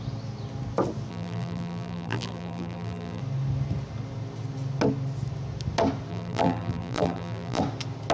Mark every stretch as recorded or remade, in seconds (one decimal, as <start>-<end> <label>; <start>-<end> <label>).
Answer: 0.0-1.1 recorded; 1.1-3.2 remade; 3.2-6.1 recorded; 6.1-7.6 remade; 7.6-8.1 recorded